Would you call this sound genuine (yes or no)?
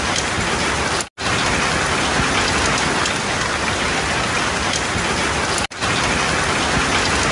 yes